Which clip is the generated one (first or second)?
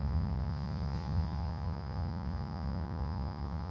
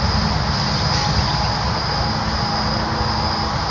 first